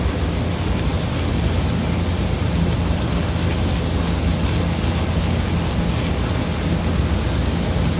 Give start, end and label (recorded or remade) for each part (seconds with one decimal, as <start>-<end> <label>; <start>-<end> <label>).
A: 0.0-8.0 recorded